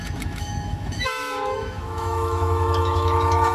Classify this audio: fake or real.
fake